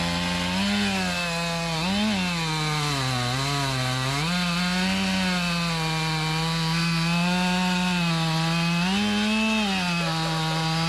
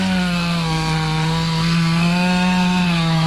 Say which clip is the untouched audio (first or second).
first